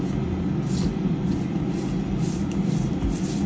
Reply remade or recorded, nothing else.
recorded